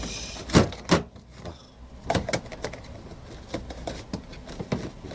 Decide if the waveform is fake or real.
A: real